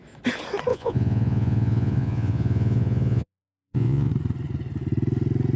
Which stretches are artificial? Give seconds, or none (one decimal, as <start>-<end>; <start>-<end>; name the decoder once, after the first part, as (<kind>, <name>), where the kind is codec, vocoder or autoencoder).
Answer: 0.7-4.1 (vocoder, Vocos)